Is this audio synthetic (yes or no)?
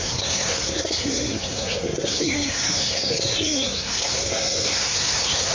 yes